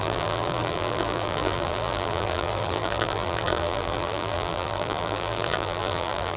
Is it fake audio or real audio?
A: fake